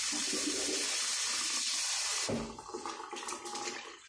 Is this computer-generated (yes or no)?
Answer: no